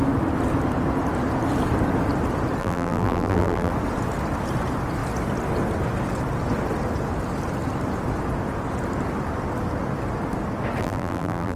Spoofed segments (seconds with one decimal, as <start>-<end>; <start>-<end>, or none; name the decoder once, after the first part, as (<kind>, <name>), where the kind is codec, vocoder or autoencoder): 2.6-3.7 (vocoder, BigVGAN v2); 10.8-11.6